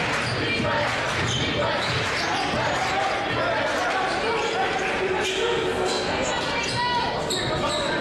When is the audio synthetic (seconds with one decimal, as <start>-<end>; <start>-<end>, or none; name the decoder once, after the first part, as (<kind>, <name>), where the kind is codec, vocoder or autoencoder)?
5.3-6.3 (codec, SNAC)